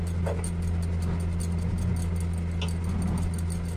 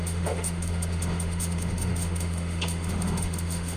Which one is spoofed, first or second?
second